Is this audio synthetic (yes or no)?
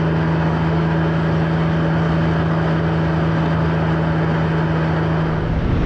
no